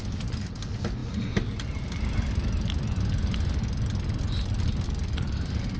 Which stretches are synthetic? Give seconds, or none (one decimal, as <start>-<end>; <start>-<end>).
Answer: none